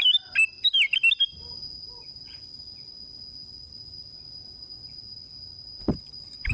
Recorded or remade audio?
recorded